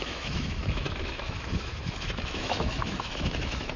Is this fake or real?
fake